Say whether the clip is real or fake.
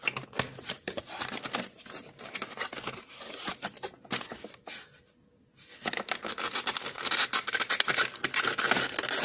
real